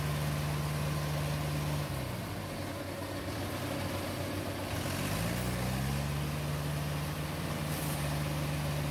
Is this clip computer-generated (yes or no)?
no